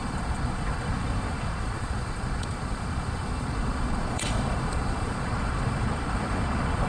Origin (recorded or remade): remade